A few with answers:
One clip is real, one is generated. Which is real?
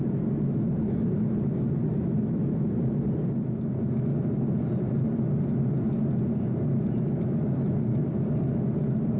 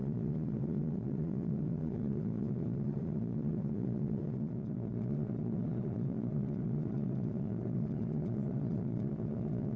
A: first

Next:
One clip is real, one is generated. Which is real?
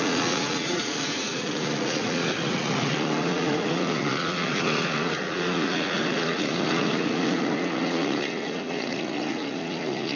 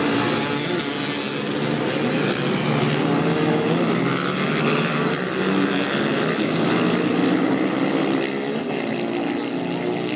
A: second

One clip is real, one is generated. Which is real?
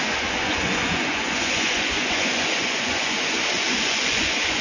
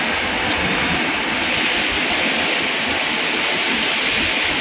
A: second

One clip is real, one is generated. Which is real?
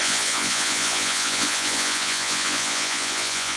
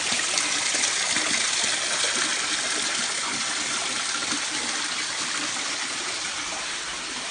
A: second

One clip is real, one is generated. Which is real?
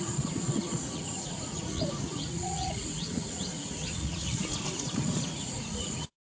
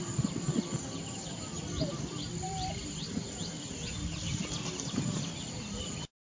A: second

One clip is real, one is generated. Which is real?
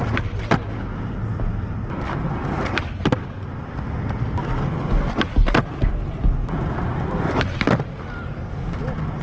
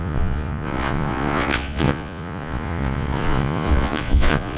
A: first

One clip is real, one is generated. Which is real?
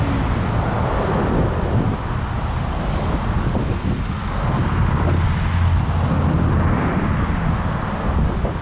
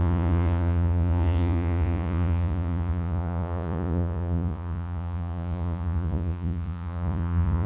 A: first